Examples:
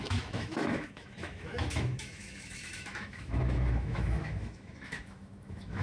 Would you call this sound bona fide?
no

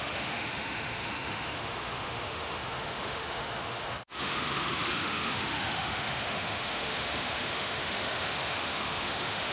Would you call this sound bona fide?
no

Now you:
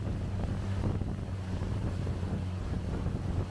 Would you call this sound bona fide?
yes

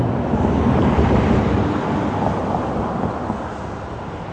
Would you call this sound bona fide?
yes